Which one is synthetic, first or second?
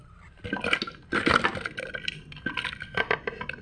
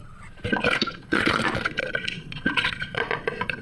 second